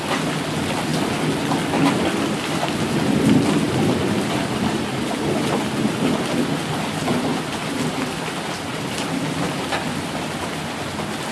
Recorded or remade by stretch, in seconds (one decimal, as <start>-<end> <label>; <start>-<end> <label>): 0.0-11.3 recorded